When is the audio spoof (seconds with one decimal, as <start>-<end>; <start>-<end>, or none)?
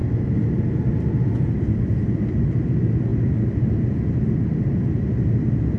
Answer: none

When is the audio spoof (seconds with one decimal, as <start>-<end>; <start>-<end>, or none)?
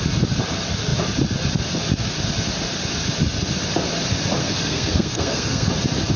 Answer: 4.4-5.7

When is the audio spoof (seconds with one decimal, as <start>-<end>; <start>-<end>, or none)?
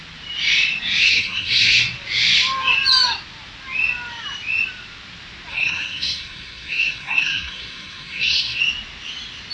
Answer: 1.0-1.8; 5.5-8.6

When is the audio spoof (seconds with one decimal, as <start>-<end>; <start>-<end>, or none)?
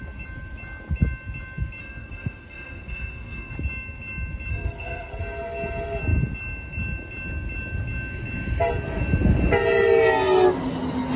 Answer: 1.8-3.5; 4.5-5.2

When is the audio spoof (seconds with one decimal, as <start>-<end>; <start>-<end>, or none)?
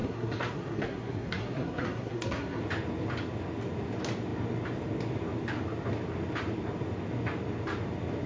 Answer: 0.0-2.6